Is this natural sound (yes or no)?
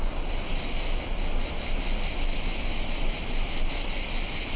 yes